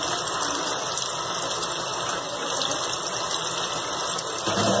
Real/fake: real